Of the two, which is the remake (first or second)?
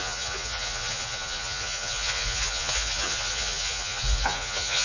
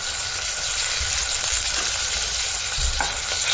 first